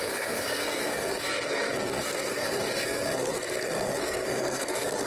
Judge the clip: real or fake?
fake